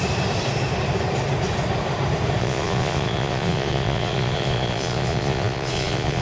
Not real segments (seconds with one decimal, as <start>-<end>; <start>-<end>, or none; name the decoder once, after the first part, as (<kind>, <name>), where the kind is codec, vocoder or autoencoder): 2.4-6.2 (vocoder, Vocos)

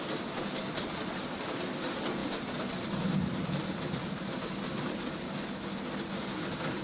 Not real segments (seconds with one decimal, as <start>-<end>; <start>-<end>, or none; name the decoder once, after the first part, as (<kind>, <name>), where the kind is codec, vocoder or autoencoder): none

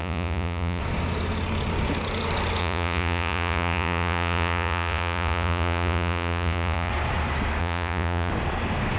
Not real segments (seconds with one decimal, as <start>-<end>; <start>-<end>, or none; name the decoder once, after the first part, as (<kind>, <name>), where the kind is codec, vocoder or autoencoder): 0.0-0.8 (vocoder, Vocos); 2.6-6.9; 7.6-8.3

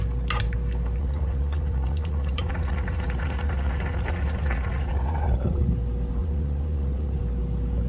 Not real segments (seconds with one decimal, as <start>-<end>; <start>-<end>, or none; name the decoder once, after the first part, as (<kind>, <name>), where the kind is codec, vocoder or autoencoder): 1.0-5.7 (vocoder, Vocos); 6.2-7.2

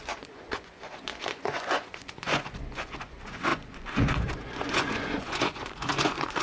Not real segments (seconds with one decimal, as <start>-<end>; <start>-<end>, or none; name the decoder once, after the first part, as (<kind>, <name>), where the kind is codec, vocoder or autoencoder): 0.0-6.4 (vocoder, Vocos)

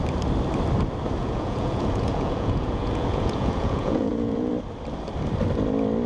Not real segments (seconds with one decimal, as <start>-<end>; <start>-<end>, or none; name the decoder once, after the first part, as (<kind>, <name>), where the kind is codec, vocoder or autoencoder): 1.2-4.5 (vocoder, Vocos)